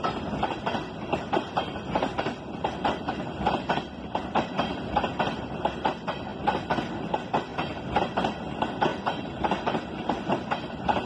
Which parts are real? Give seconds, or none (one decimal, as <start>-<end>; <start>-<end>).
0.0-11.1